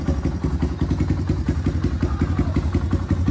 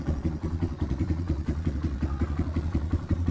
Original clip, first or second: first